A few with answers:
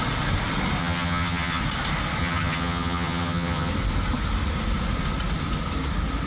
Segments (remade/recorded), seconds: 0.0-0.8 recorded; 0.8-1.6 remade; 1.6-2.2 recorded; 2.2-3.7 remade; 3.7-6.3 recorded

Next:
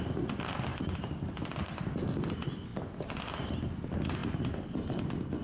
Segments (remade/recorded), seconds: 0.0-0.7 recorded; 0.7-1.7 remade; 1.7-2.7 recorded; 2.7-3.2 remade; 3.2-5.4 recorded

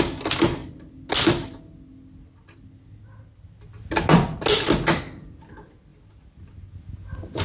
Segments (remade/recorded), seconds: 0.0-7.4 recorded

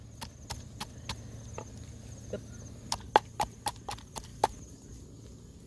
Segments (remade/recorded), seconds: 0.0-5.7 recorded